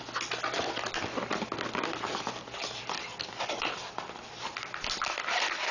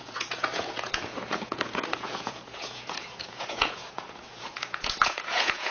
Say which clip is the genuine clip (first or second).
first